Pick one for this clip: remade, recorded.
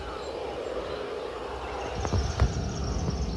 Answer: recorded